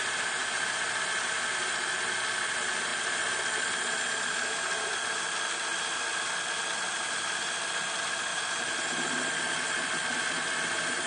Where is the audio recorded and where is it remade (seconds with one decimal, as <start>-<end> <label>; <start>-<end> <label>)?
0.0-8.3 recorded; 8.3-8.8 remade; 8.8-11.1 recorded